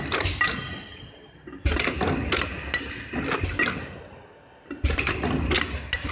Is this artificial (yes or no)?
yes